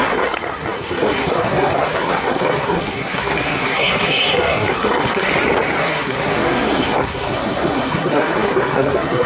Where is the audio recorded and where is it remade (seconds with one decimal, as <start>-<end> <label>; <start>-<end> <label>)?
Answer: 0.0-5.3 remade; 5.3-5.8 recorded; 5.8-9.3 remade